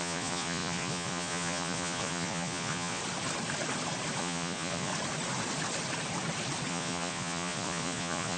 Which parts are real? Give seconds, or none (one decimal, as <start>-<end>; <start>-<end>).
3.0-4.2; 4.9-6.7